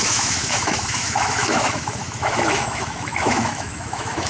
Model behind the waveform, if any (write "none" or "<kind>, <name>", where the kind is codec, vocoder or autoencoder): autoencoder, DAC-VAE